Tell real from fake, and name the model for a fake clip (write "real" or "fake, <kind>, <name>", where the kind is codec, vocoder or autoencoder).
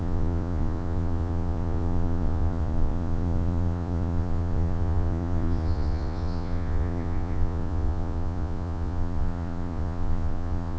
fake, vocoder, Vocos